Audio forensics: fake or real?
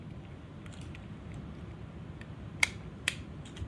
real